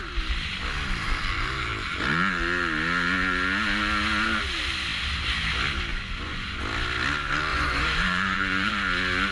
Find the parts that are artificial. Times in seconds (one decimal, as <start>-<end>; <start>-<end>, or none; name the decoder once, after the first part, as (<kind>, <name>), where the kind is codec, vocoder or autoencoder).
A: 5.9-6.6 (vocoder, Vocos); 7.5-8.7